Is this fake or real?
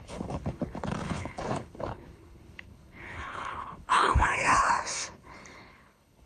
fake